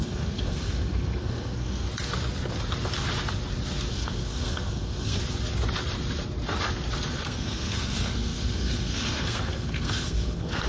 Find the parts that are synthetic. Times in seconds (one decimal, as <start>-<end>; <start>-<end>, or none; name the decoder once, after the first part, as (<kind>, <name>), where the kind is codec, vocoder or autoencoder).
0.0-1.9 (codec, SNAC); 3.9-5.2; 7.1-10.7